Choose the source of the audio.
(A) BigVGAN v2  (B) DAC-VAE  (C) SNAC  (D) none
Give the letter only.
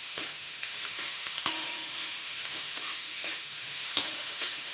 B